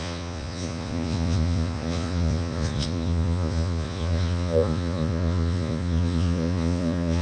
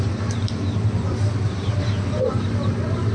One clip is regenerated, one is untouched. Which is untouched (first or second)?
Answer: second